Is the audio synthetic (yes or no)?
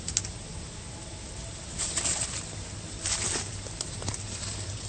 no